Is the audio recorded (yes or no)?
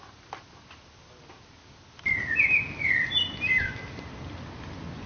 yes